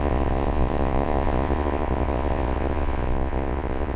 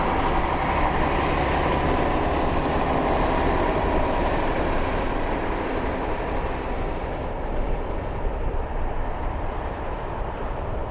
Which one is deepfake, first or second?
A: first